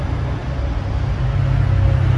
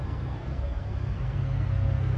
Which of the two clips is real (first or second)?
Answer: first